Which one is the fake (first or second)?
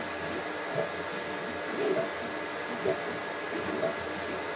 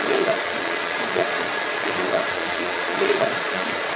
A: second